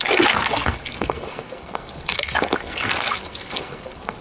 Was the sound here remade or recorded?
remade